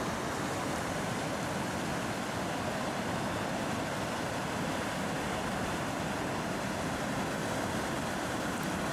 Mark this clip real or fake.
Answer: real